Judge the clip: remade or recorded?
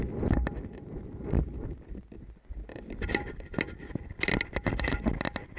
recorded